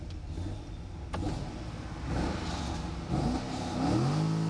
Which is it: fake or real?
real